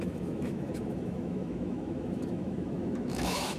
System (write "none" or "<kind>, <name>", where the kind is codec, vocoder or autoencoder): autoencoder, DAC-VAE